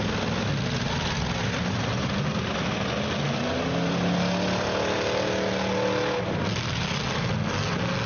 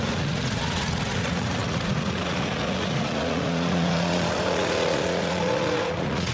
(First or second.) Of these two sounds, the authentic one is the first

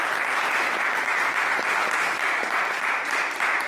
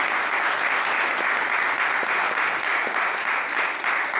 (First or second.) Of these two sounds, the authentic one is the second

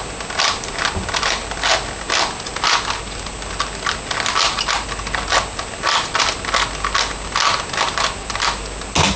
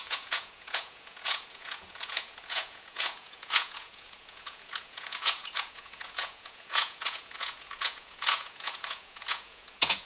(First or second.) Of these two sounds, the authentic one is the first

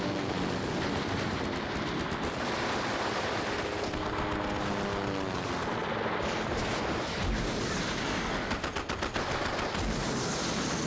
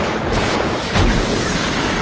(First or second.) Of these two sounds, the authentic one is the first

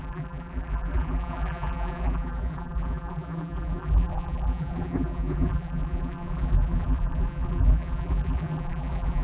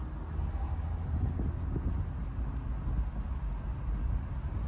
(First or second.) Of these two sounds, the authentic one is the second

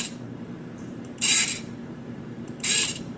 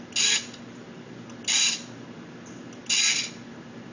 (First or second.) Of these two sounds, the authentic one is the second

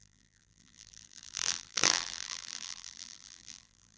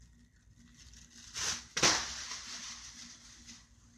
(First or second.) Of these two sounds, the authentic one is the second